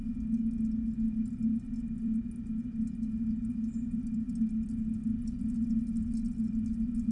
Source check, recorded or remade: recorded